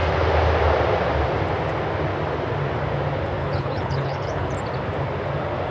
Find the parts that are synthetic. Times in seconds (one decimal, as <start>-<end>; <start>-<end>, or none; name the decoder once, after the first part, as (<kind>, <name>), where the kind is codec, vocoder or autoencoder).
3.4-4.5 (codec, HILCodec)